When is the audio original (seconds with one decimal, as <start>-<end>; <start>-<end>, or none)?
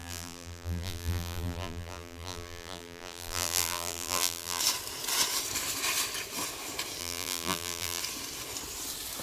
4.6-7.0; 8.0-9.2